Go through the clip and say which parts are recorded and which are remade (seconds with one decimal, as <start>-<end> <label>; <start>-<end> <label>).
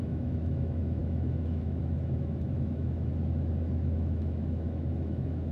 0.0-5.5 remade